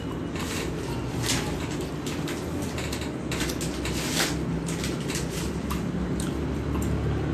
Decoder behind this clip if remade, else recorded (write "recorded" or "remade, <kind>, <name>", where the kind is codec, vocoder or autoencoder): recorded